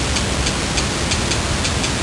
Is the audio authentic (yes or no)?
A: yes